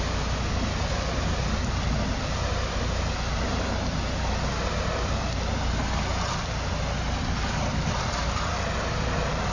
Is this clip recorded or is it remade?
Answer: recorded